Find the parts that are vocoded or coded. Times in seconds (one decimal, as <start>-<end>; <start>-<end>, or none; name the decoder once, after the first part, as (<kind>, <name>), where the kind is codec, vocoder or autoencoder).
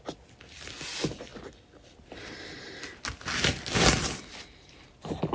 none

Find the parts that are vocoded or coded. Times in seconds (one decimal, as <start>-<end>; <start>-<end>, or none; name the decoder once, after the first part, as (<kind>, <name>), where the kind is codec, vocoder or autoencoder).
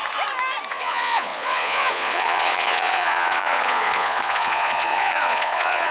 0.7-5.9 (vocoder, Vocos)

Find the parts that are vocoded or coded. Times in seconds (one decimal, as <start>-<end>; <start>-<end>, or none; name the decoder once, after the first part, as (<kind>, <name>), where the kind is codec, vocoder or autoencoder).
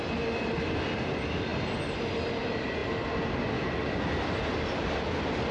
none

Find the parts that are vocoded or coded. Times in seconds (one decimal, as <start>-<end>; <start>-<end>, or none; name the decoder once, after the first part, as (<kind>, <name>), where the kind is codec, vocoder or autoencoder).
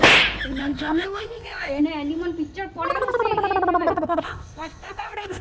0.6-1.8 (codec, ZipCodec); 3.9-5.4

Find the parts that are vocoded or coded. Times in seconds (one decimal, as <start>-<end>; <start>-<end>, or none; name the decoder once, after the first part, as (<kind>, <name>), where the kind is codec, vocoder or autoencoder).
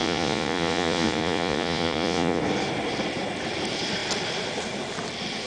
0.0-2.4 (vocoder, Vocos)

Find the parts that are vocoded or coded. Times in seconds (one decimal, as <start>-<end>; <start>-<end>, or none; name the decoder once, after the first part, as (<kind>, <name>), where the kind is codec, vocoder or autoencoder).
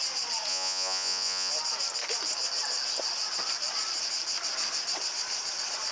0.5-1.5 (vocoder, Vocos)